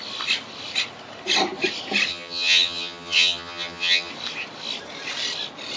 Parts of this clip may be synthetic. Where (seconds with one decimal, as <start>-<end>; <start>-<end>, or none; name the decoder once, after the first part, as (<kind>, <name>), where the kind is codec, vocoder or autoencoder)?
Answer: 2.1-4.1 (vocoder, HiFi-GAN)